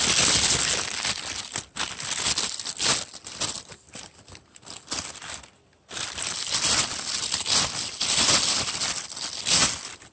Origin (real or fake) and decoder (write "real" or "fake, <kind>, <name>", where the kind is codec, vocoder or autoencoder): real